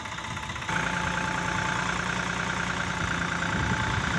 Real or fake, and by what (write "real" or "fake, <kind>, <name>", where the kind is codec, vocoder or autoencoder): real